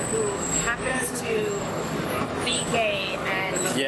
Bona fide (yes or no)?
no